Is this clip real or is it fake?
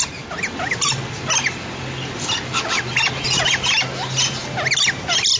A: real